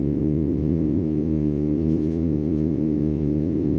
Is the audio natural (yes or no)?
no